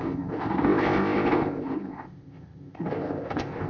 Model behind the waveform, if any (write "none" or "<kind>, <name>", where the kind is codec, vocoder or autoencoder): codec, ZipCodec